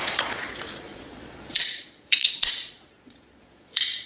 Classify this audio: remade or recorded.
remade